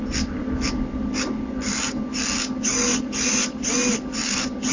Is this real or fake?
real